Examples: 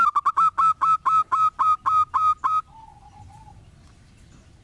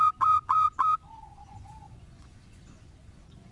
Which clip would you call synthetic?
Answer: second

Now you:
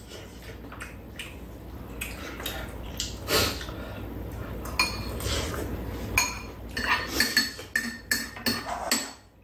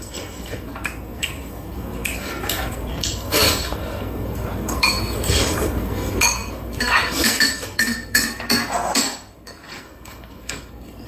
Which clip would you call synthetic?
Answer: second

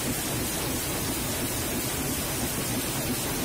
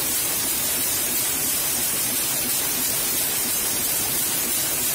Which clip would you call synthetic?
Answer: second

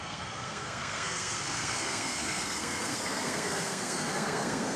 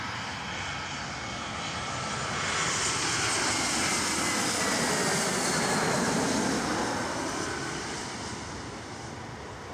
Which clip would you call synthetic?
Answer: first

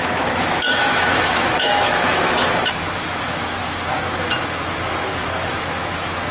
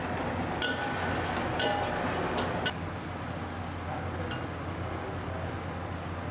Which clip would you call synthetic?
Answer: first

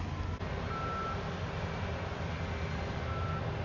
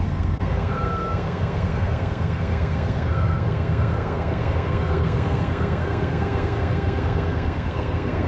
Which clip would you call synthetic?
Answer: second